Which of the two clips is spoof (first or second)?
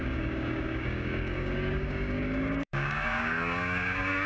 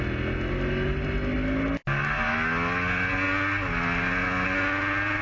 first